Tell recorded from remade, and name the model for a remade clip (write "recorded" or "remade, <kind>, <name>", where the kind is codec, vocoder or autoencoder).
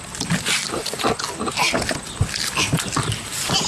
recorded